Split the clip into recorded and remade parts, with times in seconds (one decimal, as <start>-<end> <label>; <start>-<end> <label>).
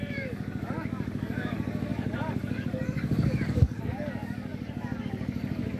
0.0-5.8 remade